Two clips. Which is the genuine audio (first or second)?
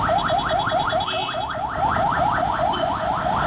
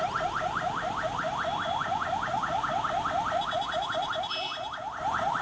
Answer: second